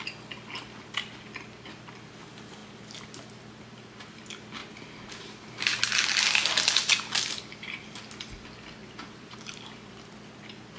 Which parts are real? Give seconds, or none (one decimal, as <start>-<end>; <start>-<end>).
0.0-8.8; 10.2-10.8